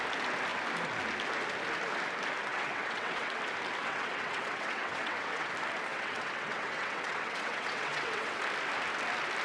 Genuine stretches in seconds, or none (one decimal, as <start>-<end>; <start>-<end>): 0.0-2.5; 3.4-3.8; 5.5-5.9; 8.4-9.4

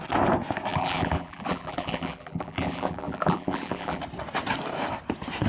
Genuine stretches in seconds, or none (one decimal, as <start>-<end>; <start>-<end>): 0.0-0.7; 4.0-5.5

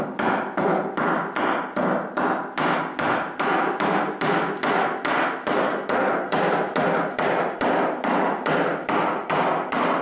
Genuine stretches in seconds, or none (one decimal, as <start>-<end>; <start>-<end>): 0.0-10.0

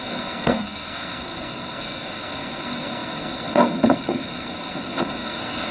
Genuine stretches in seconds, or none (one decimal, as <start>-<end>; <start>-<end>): none

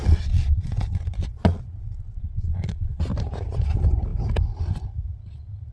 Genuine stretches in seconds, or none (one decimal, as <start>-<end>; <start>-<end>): 3.0-5.7

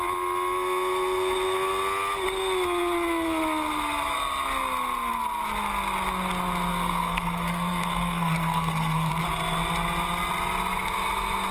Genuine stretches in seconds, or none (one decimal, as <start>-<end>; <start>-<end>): 0.0-6.7; 9.1-11.5